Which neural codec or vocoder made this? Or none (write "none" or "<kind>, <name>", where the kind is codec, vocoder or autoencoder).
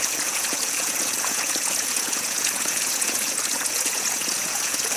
vocoder, Vocos